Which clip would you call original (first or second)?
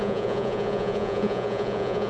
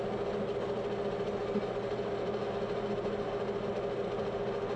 second